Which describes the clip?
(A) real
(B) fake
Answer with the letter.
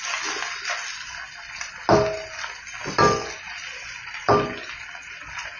A